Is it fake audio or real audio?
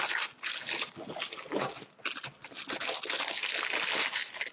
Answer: real